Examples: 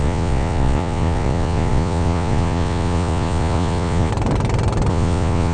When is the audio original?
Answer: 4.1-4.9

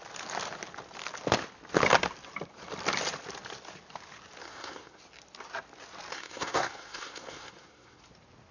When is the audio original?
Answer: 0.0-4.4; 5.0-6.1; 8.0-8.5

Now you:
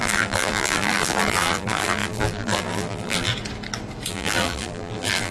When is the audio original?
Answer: 3.3-4.1